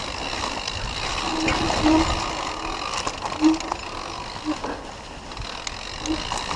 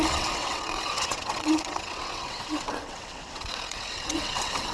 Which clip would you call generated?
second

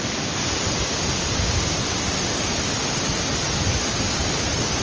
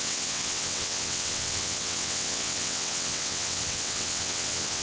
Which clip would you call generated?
second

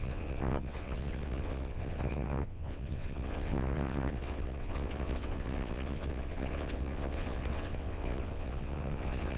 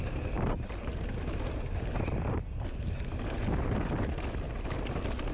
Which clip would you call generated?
first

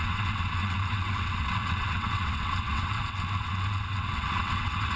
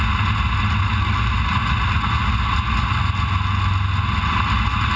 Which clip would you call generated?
first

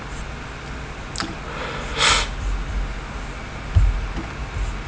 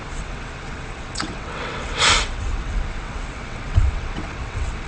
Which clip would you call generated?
second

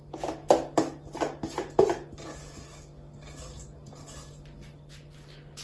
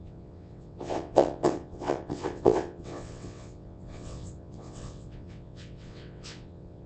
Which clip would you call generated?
second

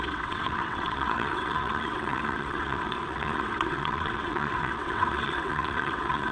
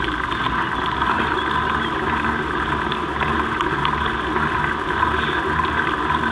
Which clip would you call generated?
first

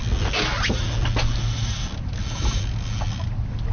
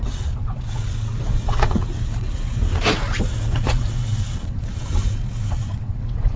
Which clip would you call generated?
second